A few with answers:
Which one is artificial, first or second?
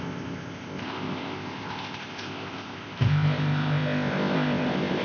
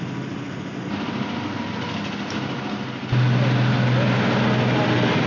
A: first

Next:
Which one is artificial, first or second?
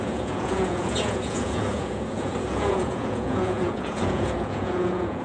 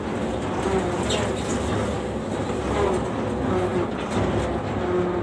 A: first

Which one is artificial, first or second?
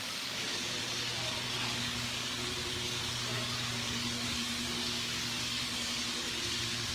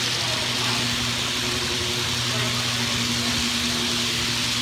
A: first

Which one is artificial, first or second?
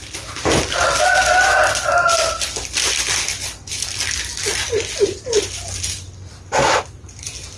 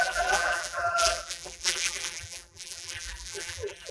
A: second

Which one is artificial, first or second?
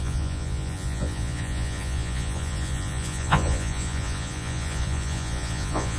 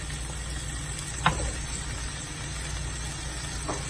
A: first